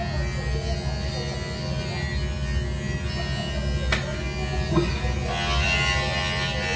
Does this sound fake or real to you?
real